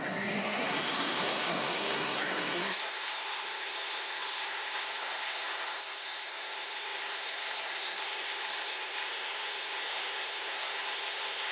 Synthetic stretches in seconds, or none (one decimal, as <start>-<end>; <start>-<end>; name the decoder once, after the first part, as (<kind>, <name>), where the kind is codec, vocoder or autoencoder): 0.0-11.5 (codec, SNAC)